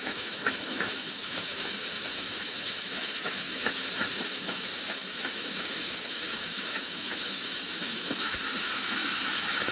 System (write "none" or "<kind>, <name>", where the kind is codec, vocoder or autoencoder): autoencoder, DAC-VAE